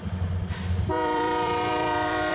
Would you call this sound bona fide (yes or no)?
no